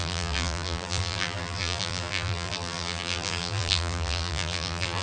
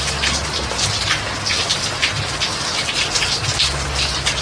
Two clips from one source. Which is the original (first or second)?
second